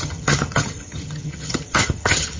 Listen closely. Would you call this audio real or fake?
fake